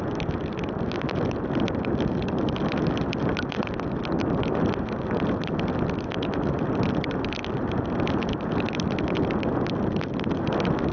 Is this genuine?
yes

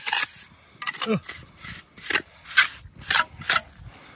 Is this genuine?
yes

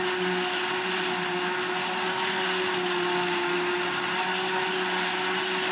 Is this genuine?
yes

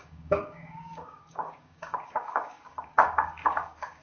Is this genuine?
no